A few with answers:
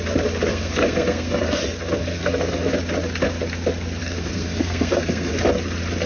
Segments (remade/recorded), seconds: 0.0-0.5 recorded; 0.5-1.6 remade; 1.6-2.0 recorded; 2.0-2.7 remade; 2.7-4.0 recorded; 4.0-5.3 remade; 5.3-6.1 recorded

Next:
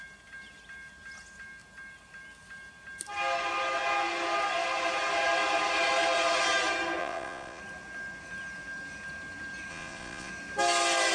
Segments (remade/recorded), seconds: 0.0-7.0 recorded; 7.0-7.6 remade; 7.6-9.7 recorded; 9.7-10.3 remade; 10.3-11.1 recorded